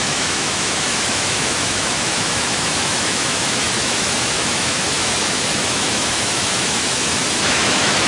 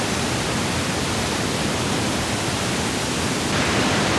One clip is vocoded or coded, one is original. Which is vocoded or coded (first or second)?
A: first